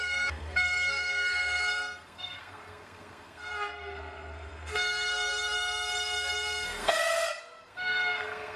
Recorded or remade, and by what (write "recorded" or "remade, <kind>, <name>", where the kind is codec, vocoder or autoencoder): remade, codec, SNAC